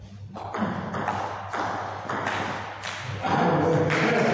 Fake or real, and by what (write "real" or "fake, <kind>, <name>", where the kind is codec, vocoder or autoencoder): real